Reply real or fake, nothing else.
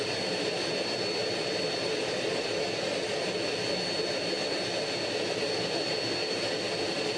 real